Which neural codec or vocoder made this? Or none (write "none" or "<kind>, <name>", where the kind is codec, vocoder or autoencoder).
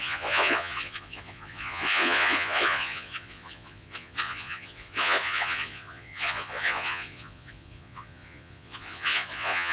vocoder, Vocos